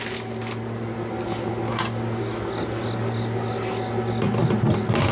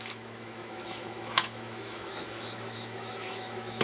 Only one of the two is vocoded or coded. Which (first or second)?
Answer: second